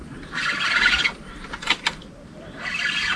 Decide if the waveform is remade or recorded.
remade